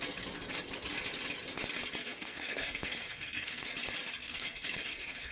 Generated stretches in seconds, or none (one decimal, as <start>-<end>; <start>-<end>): 2.0-3.7; 4.2-5.3